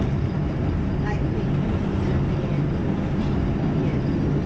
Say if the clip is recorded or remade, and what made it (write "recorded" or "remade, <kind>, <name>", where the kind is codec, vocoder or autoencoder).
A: recorded